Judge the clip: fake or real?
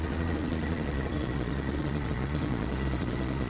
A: fake